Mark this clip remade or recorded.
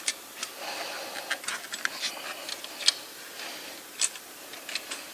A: recorded